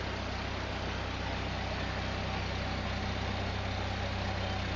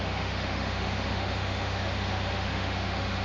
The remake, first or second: second